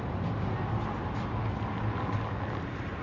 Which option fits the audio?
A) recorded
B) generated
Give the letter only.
A